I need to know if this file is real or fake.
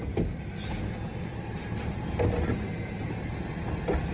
real